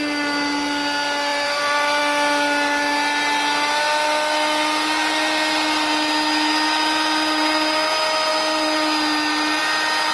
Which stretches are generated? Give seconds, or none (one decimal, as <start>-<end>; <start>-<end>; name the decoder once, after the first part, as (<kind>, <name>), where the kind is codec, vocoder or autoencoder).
1.3-2.0 (vocoder, BigVGAN v2)

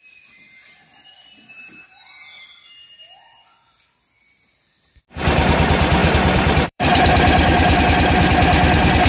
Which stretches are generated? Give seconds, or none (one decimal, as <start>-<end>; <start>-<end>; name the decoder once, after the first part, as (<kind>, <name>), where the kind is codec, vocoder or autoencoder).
6.0-7.8 (vocoder, BigVGAN v2)

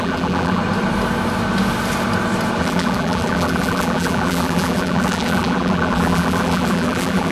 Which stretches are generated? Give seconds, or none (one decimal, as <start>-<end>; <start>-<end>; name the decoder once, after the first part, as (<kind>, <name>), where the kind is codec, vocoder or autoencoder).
0.0-0.6 (vocoder, BigVGAN v2); 2.6-7.3

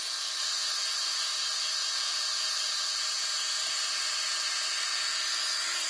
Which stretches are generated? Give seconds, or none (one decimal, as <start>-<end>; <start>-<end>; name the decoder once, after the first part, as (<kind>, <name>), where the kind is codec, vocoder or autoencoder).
0.0-5.9 (vocoder, BigVGAN v2)

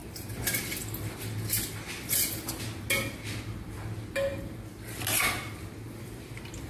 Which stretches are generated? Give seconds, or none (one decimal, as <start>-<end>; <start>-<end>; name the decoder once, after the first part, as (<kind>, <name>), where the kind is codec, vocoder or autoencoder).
none

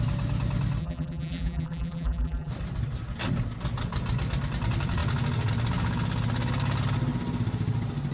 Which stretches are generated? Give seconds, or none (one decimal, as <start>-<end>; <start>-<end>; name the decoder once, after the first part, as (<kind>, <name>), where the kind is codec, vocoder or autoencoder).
0.8-2.5 (vocoder, BigVGAN v2)